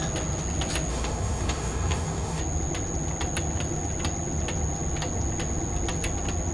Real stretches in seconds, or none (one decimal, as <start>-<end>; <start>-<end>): 0.0-0.9; 2.4-6.5